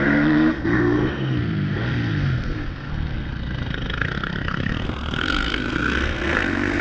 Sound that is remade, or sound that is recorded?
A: remade